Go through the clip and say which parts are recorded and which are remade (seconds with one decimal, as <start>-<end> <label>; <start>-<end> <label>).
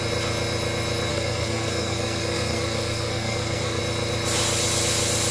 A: 0.0-1.1 recorded; 1.1-3.8 remade; 3.8-5.3 recorded